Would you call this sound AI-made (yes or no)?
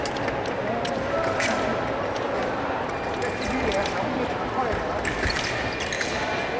no